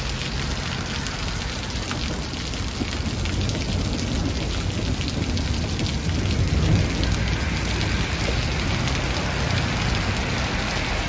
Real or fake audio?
real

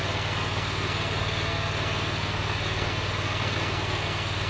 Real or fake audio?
fake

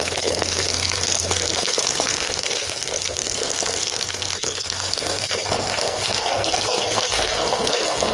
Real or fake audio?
fake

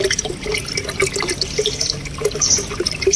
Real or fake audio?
real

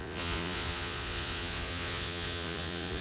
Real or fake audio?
fake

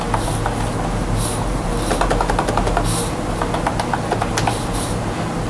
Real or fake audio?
real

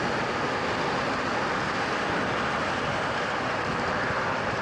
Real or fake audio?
real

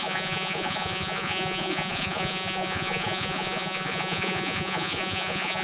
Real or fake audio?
fake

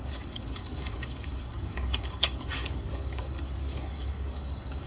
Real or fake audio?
fake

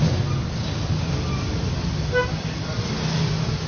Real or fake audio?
real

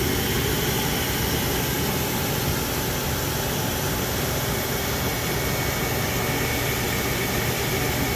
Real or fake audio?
real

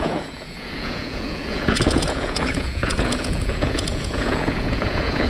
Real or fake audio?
fake